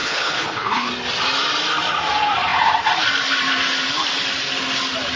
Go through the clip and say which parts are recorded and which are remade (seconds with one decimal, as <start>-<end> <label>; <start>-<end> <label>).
0.0-0.9 remade; 0.9-5.2 recorded